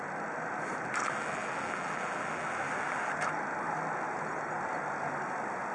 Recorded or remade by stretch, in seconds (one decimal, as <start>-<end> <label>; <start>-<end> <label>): 0.0-5.7 recorded